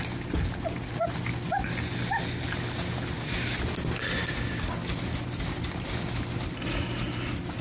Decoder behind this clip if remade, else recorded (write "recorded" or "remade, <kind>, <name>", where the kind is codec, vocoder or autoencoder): remade, vocoder, BigVGAN v2